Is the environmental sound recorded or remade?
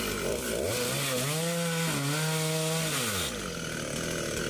recorded